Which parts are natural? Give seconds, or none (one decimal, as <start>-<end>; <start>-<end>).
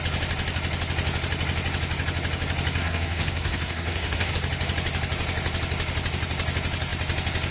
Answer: 0.0-2.8; 4.3-7.5